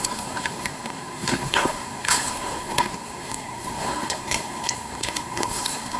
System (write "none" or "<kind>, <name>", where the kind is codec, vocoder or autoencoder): codec, SNAC